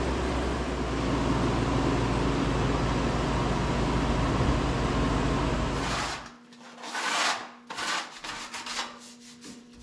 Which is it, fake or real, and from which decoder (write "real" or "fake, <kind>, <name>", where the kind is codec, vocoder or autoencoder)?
real